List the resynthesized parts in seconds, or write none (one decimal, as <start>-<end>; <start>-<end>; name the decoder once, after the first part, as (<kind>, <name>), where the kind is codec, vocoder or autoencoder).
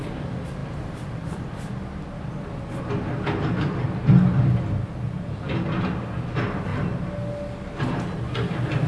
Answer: none